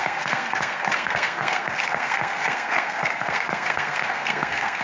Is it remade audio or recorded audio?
remade